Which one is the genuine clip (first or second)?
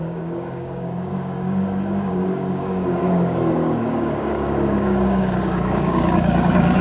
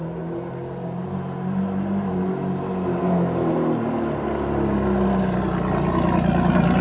second